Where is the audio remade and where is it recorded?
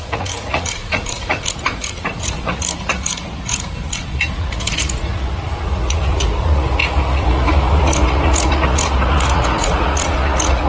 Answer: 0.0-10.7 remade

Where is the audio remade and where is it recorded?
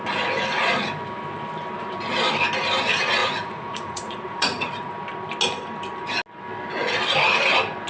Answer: 0.0-3.2 recorded; 3.2-4.9 remade; 4.9-7.9 recorded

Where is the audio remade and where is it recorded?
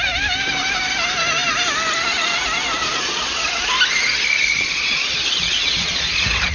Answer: 0.0-2.8 recorded; 2.8-3.6 remade; 3.6-4.5 recorded; 4.5-6.1 remade; 6.1-6.5 recorded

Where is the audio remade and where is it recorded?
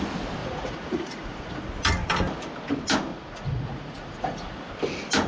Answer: 0.0-0.4 recorded; 0.4-1.7 remade; 1.7-3.1 recorded; 3.1-4.7 remade; 4.7-5.3 recorded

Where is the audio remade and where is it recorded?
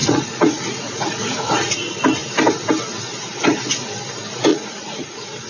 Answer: 0.0-1.7 remade; 1.7-4.5 recorded; 4.5-5.5 remade